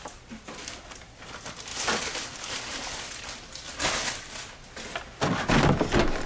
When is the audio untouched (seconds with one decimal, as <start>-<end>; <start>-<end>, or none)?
0.0-6.3